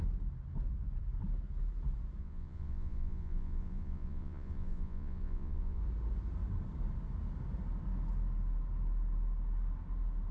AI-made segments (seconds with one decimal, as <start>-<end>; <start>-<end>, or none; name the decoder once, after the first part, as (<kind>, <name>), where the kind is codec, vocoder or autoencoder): 2.2-5.8 (vocoder, Vocos)